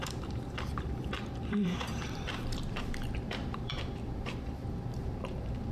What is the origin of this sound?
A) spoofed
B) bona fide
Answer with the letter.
A